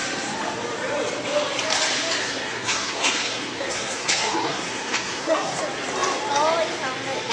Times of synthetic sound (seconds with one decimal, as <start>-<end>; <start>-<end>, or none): 2.2-5.6